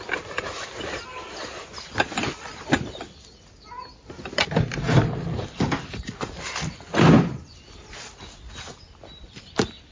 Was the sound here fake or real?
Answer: real